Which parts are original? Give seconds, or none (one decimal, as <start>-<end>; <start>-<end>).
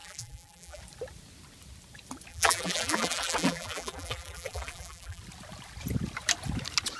0.8-2.3; 5.2-7.0